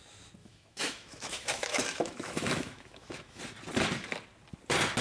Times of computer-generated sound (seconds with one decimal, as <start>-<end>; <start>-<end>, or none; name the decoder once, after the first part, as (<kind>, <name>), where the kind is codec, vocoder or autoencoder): 0.4-3.4 (autoencoder, DAC-VAE)